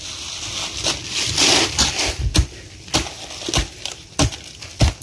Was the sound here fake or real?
real